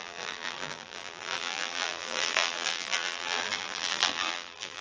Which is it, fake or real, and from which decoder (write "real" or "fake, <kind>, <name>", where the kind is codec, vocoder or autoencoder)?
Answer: fake, vocoder, BigVGAN v2